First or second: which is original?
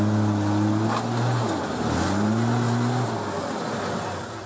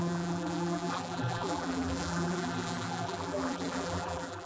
first